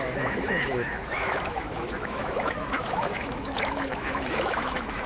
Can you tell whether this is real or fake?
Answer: fake